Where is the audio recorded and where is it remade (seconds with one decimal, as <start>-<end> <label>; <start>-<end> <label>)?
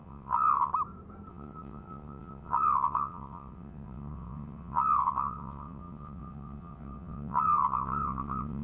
0.0-0.7 remade; 0.7-1.3 recorded; 1.3-8.6 remade